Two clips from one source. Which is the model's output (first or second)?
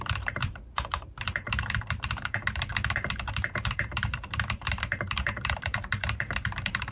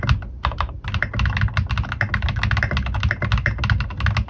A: first